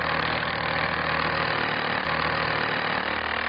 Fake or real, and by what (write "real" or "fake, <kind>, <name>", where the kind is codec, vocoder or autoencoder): real